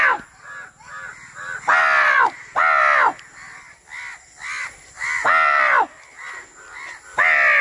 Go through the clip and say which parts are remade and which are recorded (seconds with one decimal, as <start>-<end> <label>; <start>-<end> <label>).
0.0-7.6 recorded